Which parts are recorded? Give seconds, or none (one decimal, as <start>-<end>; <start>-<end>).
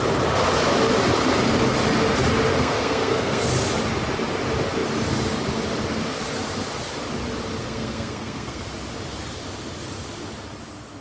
0.0-2.5; 3.5-7.6; 8.6-11.0